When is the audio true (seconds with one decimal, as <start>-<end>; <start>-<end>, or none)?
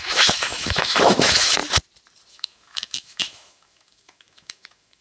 1.6-2.3